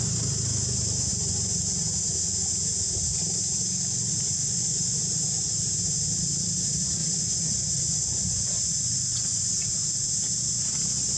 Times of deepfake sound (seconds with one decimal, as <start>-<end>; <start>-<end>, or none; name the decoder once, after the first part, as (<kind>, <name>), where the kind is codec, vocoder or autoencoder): 1.1-1.6 (vocoder, Vocos); 4.4-5.0; 7.0-9.5